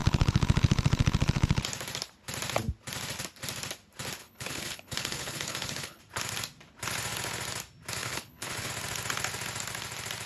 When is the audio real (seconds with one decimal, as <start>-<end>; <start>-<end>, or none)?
1.6-4.2; 6.0-8.0; 8.7-10.3